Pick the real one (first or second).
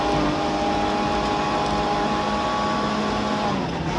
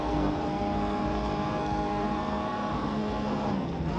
first